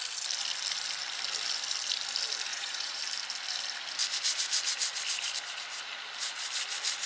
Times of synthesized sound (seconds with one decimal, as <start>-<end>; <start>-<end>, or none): 2.5-3.0